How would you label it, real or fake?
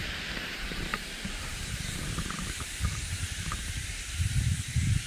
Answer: fake